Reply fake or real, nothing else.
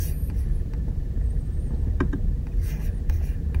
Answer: fake